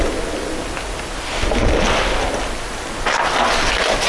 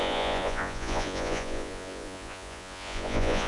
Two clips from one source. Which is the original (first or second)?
first